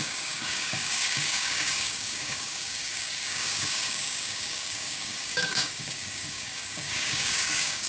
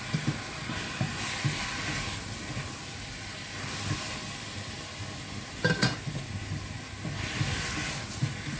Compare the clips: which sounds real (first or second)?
second